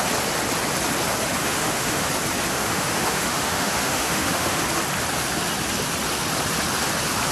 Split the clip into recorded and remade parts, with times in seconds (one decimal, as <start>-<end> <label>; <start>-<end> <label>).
0.0-1.4 recorded; 1.4-2.1 remade; 2.1-2.5 recorded; 2.5-4.6 remade; 4.6-7.3 recorded